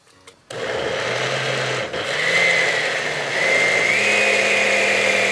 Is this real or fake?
real